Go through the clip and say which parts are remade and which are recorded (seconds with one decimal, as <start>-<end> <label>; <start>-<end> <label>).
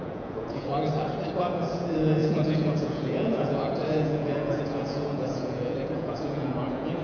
0.0-0.7 remade; 0.7-1.4 recorded; 1.4-7.0 remade